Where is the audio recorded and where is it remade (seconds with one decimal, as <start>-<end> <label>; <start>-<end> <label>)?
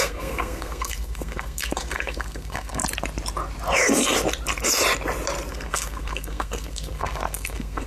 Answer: 0.0-2.8 remade; 2.8-5.5 recorded; 5.5-7.9 remade